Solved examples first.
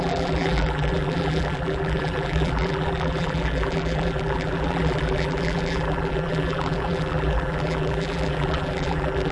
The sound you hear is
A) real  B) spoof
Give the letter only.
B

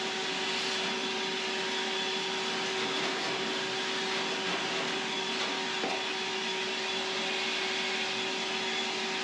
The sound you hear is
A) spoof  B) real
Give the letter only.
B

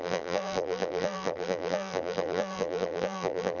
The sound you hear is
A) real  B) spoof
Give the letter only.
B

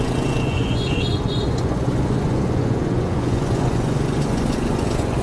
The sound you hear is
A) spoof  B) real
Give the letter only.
A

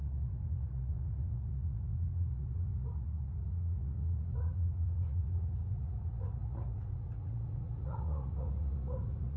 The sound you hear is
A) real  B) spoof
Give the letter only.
B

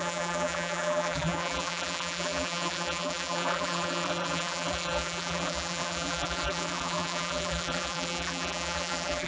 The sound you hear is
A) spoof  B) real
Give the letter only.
A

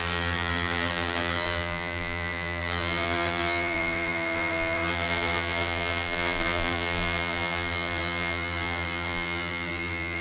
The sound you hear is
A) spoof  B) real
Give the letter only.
A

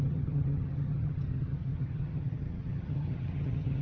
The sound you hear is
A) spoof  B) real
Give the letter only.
A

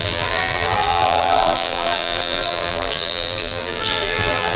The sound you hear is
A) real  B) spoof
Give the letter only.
B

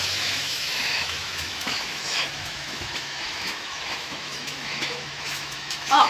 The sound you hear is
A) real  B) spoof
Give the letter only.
B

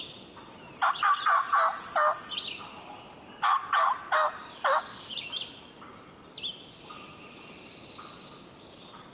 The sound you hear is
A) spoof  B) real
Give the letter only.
B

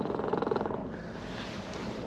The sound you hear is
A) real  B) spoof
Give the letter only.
A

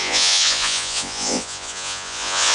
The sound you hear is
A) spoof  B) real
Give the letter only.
A